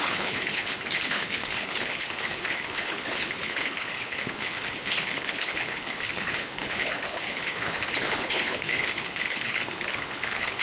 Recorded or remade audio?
remade